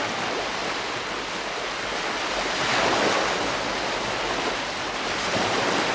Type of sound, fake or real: real